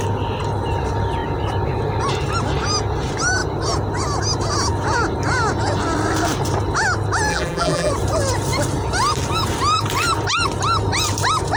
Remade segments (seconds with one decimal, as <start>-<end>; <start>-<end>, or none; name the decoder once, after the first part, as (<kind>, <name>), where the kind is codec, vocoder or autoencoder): 7.3-7.9 (vocoder, BigVGAN v2)